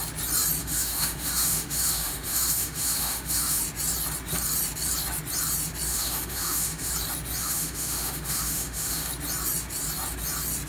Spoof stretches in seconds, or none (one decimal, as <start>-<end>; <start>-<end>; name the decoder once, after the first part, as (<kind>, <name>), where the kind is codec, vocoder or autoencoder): 0.6-3.6 (autoencoder, DAC-VAE); 5.9-6.9; 7.4-9.1